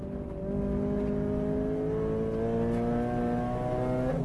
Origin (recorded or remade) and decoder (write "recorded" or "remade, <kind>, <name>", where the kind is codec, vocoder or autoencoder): recorded